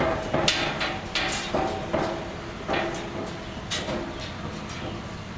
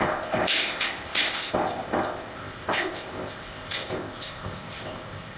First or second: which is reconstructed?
second